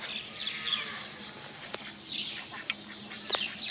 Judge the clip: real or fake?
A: real